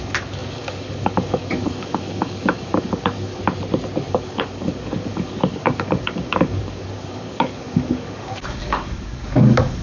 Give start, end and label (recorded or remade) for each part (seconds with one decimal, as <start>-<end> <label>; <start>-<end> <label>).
0.0-3.3 remade; 3.3-4.1 recorded; 4.1-9.8 remade